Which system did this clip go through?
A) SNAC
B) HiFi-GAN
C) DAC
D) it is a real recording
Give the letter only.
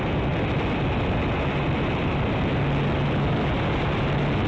D